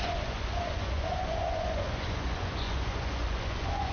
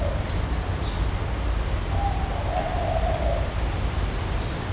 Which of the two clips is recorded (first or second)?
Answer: second